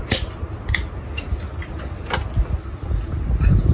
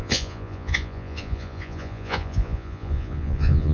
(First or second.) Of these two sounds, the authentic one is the first